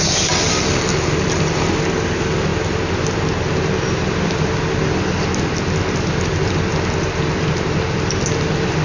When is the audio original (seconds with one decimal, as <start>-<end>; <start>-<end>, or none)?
0.0-8.8